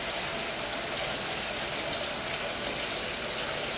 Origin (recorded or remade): recorded